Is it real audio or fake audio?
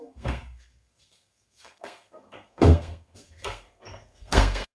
fake